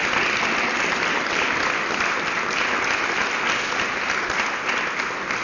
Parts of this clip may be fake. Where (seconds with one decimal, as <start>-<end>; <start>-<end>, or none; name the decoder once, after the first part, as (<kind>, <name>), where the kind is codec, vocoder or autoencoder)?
none